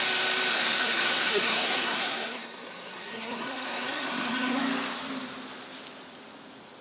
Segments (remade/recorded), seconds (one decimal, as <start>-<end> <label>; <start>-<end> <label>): 0.0-0.5 recorded; 0.5-4.6 remade; 4.6-6.8 recorded